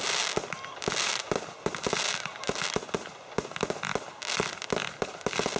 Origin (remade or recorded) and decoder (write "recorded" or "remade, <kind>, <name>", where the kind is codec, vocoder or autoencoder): recorded